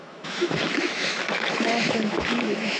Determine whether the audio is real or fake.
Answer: fake